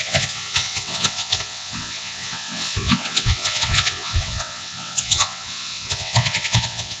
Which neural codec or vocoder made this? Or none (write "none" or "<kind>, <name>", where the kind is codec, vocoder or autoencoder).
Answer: vocoder, WaveNeXt